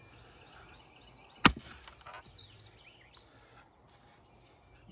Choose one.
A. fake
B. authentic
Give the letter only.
B